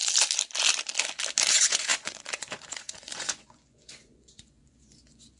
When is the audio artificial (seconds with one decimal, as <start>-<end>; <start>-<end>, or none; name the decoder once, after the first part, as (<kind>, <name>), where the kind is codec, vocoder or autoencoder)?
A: 1.5-5.4 (vocoder, Vocos)